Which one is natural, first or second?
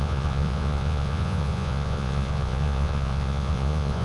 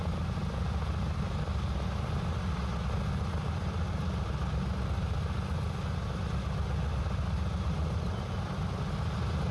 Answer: second